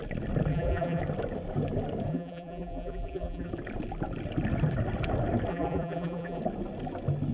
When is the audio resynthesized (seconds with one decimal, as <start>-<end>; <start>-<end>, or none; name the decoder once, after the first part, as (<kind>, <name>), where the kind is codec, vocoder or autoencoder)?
0.5-1.0 (vocoder, BigVGAN v2); 2.1-3.5; 5.5-6.4